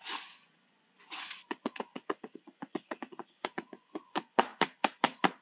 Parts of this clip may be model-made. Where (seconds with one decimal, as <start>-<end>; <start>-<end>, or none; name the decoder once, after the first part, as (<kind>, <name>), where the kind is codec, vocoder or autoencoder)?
0.0-4.5 (vocoder, Vocos)